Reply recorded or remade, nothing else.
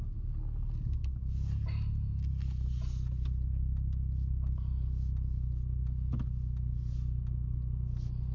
recorded